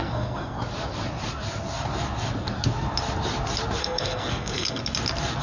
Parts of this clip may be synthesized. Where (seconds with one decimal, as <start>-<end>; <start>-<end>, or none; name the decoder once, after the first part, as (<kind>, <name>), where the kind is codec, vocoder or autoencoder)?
0.0-0.6 (codec, SNAC); 3.8-4.8